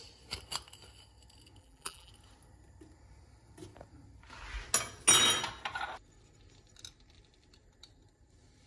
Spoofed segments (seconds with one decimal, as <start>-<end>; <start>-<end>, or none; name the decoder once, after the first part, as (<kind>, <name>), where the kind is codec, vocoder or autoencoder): 1.6-2.1 (vocoder, BigVGAN v2)